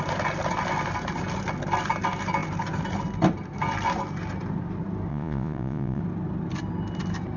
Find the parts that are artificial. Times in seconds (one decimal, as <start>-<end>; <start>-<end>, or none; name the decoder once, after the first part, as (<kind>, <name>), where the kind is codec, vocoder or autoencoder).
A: 5.1-6.0 (vocoder, Vocos)